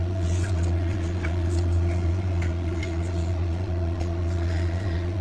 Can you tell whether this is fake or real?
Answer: fake